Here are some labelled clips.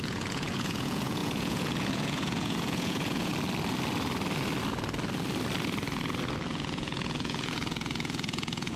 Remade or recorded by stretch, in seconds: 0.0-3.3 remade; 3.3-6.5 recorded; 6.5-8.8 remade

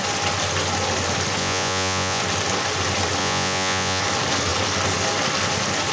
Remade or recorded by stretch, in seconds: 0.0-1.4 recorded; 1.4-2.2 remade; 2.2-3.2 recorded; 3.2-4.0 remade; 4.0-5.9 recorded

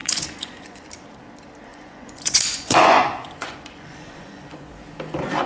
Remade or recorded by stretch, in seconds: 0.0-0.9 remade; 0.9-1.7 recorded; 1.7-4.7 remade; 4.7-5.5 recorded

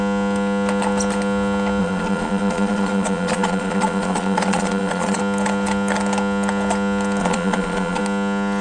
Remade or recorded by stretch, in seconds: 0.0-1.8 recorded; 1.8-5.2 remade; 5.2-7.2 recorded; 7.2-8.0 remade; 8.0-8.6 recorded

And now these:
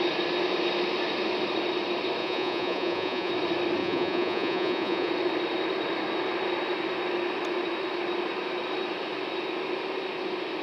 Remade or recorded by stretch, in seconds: 0.0-2.2 recorded; 2.2-3.3 remade; 3.3-3.8 recorded; 3.8-5.1 remade; 5.1-10.6 recorded